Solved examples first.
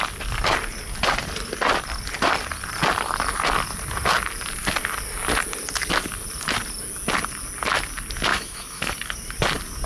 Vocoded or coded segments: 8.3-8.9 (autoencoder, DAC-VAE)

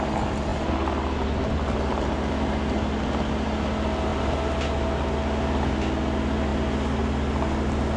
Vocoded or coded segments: none

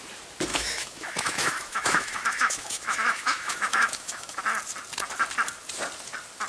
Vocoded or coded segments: 0.5-4.4 (autoencoder, DAC-VAE)